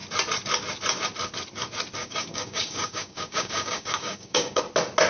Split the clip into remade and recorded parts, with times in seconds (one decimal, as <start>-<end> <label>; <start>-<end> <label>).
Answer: 0.0-2.0 recorded; 2.0-4.6 remade; 4.6-5.1 recorded